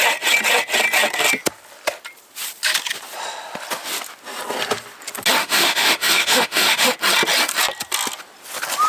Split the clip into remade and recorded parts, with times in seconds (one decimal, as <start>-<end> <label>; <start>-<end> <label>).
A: 0.0-5.4 recorded; 5.4-6.9 remade; 6.9-8.9 recorded